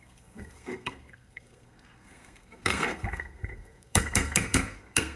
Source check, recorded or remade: remade